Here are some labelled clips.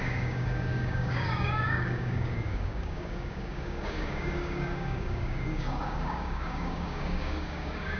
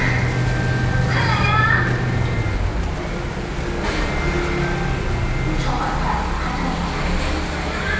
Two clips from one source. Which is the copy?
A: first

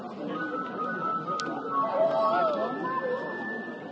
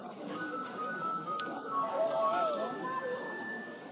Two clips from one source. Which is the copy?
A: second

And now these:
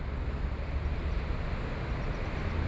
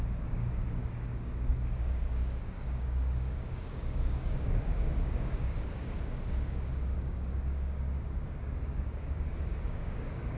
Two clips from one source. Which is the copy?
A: second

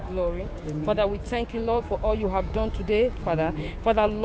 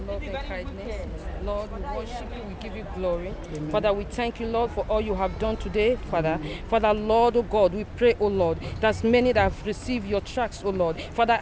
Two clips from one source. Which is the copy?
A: first